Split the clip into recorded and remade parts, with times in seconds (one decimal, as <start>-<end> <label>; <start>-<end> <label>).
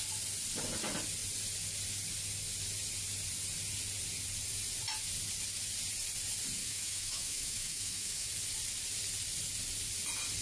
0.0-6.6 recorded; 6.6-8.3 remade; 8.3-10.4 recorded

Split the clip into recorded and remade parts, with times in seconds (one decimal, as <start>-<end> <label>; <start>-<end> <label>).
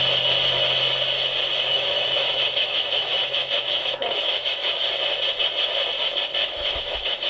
0.0-1.7 recorded; 1.7-4.9 remade; 4.9-6.4 recorded; 6.4-7.3 remade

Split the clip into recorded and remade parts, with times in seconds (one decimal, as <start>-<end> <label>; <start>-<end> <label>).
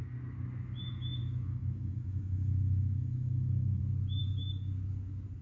0.0-1.2 recorded; 1.2-3.8 remade; 3.8-5.4 recorded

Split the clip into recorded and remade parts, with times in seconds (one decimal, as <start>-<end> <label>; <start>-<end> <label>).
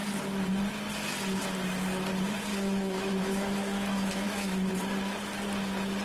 0.0-2.5 recorded; 2.5-4.7 remade; 4.7-6.0 recorded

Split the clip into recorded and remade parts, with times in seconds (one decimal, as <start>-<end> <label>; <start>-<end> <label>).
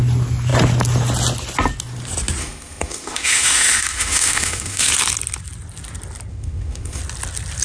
0.0-2.4 recorded; 2.4-4.9 remade; 4.9-6.3 recorded; 6.3-7.0 remade; 7.0-7.6 recorded